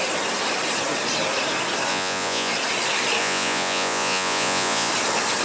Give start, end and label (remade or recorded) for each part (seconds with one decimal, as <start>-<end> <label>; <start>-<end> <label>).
0.0-1.9 recorded; 1.9-2.5 remade; 2.5-3.2 recorded; 3.2-4.9 remade; 4.9-5.4 recorded